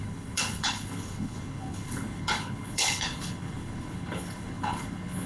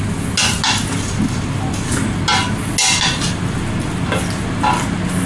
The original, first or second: second